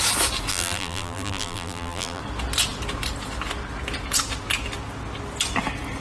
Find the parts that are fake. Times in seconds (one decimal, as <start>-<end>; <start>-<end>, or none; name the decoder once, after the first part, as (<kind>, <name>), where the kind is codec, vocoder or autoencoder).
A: 0.5-2.2 (vocoder, BigVGAN v2)